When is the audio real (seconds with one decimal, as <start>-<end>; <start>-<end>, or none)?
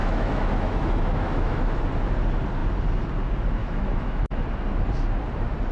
1.8-3.6; 4.4-5.7